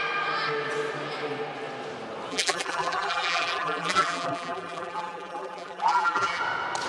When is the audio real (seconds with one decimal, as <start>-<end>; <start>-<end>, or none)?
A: 0.0-2.3; 6.4-6.9